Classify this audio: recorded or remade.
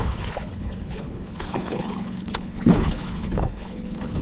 remade